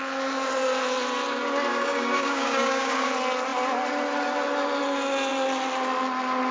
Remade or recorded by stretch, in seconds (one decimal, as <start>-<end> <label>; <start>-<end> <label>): 0.0-1.7 recorded; 1.7-3.1 remade; 3.1-6.5 recorded